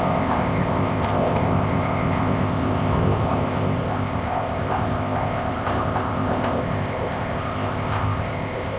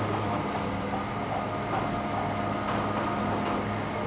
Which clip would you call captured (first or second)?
second